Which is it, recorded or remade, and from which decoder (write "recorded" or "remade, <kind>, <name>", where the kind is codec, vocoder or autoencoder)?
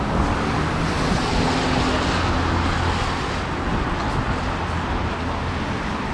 recorded